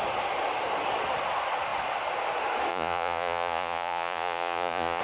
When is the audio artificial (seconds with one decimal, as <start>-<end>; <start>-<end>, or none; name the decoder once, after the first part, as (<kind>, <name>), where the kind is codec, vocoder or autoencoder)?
2.7-5.0 (vocoder, Vocos)